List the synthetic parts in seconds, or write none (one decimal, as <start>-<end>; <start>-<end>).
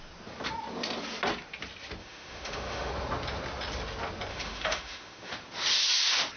2.0-2.9; 4.3-5.3